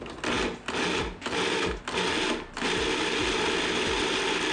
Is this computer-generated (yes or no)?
no